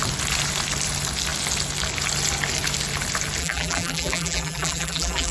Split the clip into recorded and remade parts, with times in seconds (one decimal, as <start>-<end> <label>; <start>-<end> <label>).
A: 0.0-3.4 recorded; 3.4-5.3 remade